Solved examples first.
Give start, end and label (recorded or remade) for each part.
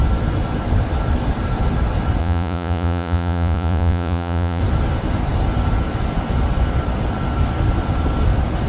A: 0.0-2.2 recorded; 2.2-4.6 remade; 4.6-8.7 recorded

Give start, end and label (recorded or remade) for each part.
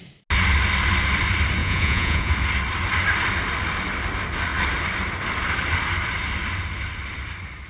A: 0.0-1.6 recorded; 1.6-2.3 remade; 2.3-7.7 recorded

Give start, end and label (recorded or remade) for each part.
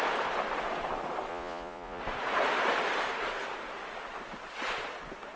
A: 0.0-1.3 recorded; 1.3-2.0 remade; 2.0-5.4 recorded